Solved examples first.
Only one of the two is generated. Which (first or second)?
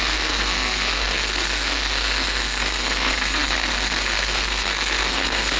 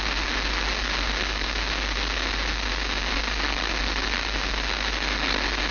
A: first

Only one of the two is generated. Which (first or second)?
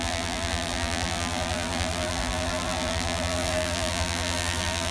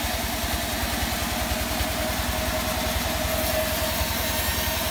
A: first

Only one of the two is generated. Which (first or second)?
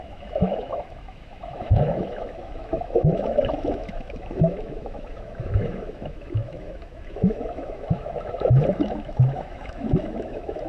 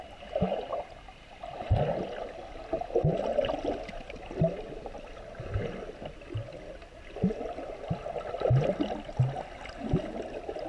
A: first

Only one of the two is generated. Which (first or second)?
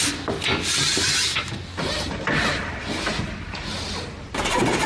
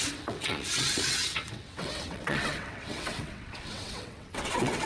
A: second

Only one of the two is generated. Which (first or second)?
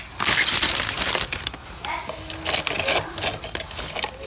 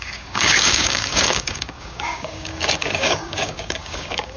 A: second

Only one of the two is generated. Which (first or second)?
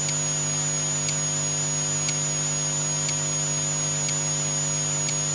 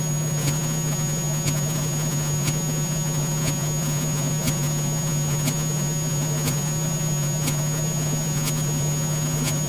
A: second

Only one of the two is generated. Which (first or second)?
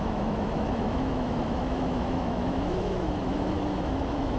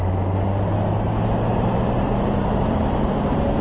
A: first